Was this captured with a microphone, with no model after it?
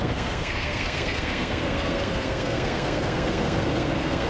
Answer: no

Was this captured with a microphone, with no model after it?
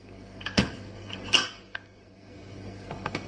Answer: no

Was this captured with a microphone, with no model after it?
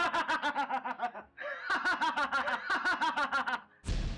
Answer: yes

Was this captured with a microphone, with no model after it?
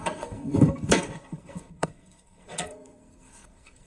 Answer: no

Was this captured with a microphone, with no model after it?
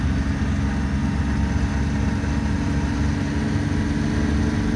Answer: yes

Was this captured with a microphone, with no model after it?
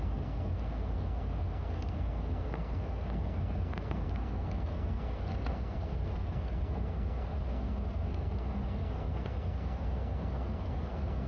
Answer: no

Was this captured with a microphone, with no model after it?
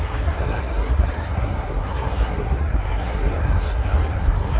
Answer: no